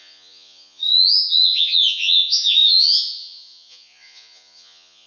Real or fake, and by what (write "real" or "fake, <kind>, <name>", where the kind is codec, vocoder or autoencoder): fake, vocoder, Vocos